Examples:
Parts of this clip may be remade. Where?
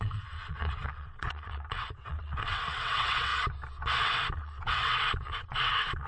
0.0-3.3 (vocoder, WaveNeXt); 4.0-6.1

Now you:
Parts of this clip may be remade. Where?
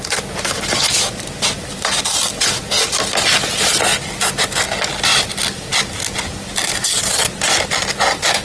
none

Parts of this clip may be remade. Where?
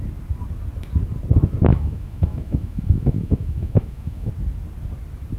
1.7-4.3 (autoencoder, DAC-VAE)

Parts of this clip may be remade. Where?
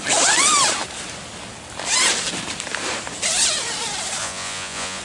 4.2-5.0 (vocoder, Vocos)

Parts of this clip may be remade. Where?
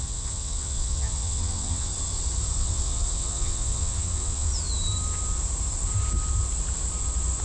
0.0-1.9 (vocoder, WaveNeXt); 2.6-4.5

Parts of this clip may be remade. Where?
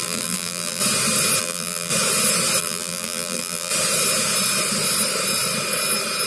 0.0-0.8 (vocoder, BigVGAN v2); 1.4-1.9; 2.6-3.7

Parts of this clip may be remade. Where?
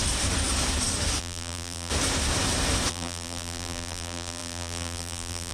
1.2-1.9 (vocoder, BigVGAN v2); 2.9-5.5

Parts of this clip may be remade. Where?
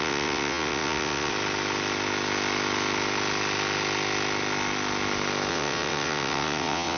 0.0-1.3 (vocoder, WaveNeXt); 5.5-7.0